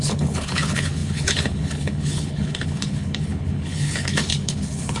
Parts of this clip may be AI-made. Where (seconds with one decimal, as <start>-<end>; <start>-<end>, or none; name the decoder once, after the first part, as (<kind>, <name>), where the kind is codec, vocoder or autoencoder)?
0.0-5.0 (codec, HILCodec)